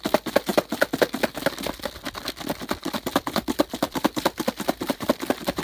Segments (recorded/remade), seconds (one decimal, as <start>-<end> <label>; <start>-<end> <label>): 0.0-0.5 remade; 0.5-3.2 recorded; 3.2-5.6 remade